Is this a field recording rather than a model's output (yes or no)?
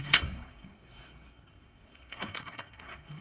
no